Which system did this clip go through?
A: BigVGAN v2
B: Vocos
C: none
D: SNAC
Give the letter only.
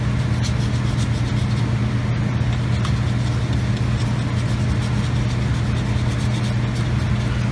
C